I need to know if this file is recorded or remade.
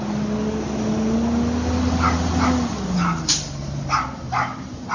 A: recorded